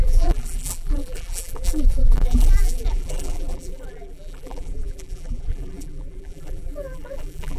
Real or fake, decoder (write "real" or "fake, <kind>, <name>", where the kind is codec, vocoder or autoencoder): fake, vocoder, BigVGAN v2